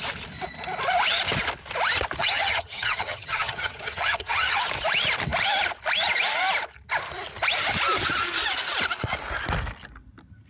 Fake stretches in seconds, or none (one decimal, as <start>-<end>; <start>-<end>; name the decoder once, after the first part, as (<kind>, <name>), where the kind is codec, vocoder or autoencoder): 2.2-4.6 (vocoder, HiFi-GAN)